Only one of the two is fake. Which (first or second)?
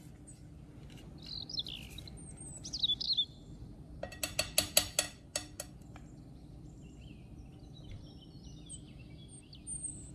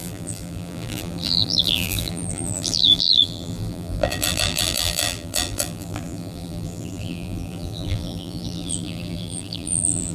second